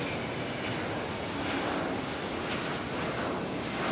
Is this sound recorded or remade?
recorded